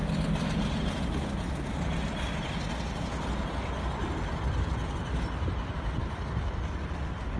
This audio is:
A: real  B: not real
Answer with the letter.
A